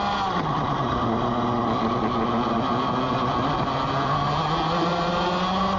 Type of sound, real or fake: real